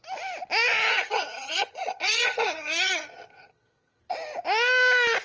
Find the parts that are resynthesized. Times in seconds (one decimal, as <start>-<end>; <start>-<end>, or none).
0.9-4.0